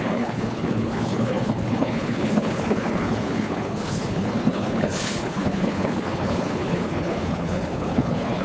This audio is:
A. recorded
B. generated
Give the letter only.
B